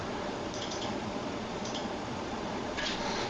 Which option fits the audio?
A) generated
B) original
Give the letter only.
A